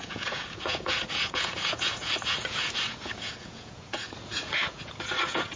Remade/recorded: remade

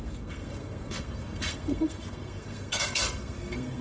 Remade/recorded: remade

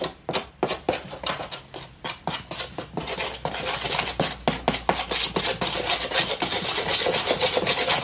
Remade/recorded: recorded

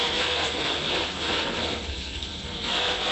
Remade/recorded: remade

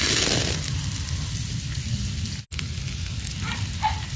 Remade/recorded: recorded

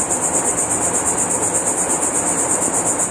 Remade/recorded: recorded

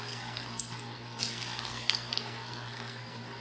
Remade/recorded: remade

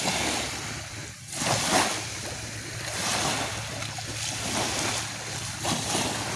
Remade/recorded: recorded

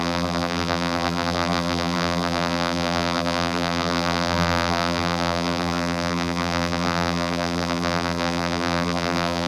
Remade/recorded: remade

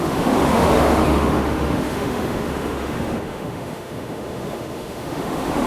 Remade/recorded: remade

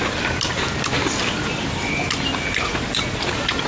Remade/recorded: recorded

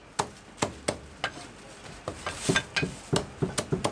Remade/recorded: recorded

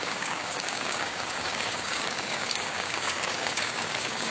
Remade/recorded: remade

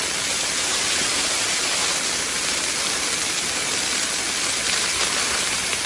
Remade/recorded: recorded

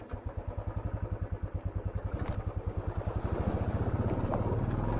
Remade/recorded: recorded